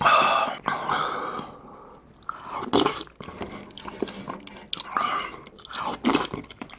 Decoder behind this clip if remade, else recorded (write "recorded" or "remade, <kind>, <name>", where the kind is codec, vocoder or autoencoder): recorded